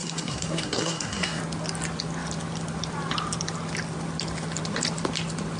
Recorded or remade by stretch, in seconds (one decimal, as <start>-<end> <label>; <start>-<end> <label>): 0.0-1.4 remade; 1.4-5.6 recorded